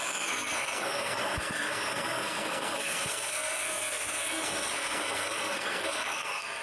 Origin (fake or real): fake